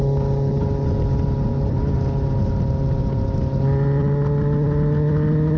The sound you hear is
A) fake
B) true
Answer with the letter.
B